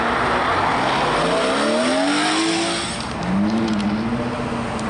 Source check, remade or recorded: recorded